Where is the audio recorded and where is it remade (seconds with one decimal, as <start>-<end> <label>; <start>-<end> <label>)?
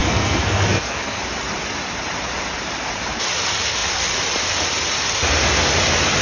0.0-1.2 remade; 1.2-6.2 recorded